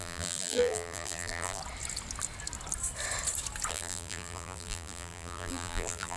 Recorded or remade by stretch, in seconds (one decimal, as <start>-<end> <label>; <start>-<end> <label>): 0.0-1.6 remade; 1.6-3.7 recorded; 3.7-6.2 remade